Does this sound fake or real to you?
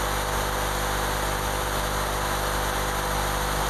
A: real